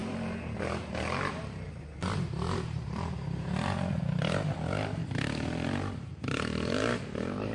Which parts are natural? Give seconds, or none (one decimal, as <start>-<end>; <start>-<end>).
none